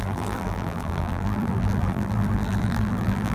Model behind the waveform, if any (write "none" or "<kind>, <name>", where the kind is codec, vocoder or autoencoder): vocoder, BigVGAN v2